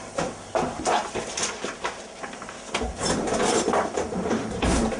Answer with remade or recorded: remade